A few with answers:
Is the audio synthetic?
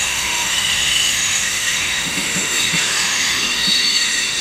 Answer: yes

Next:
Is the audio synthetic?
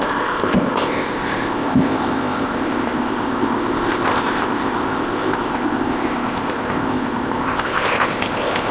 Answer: yes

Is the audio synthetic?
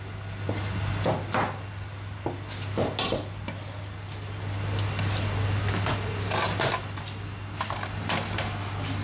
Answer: no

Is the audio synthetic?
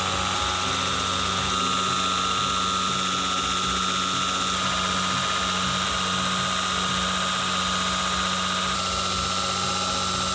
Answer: no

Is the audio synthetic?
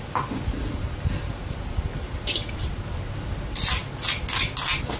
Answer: no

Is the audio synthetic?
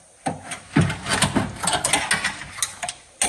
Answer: no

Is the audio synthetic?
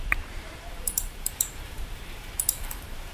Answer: yes